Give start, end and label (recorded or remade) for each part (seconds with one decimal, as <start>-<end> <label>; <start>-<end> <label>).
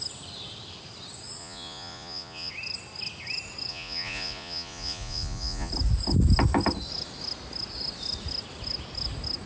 0.0-1.4 recorded; 1.4-2.5 remade; 2.5-3.7 recorded; 3.7-5.7 remade; 5.7-9.5 recorded